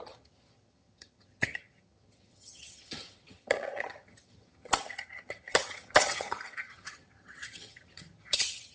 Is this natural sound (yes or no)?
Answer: no